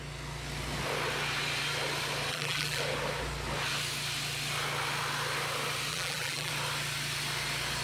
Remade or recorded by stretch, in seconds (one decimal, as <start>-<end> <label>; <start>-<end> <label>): 0.0-2.3 recorded; 2.3-2.8 remade; 2.8-5.9 recorded; 5.9-6.5 remade; 6.5-7.8 recorded